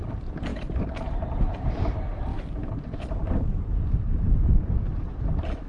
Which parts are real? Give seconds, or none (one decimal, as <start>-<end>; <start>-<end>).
0.0-0.5; 1.3-2.3; 4.3-5.7